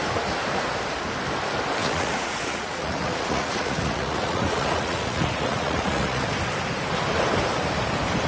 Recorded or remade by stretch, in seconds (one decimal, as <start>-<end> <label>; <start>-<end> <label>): 0.0-1.8 recorded; 1.8-6.2 remade; 6.2-8.3 recorded